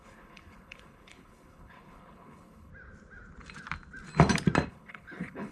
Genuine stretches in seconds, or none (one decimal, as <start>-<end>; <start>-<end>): 2.7-4.7